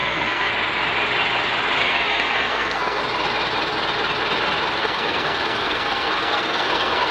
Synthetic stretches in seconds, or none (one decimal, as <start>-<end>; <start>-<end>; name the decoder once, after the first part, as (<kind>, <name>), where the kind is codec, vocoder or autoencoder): 0.0-0.5 (codec, SNAC); 1.8-3.0; 4.8-7.1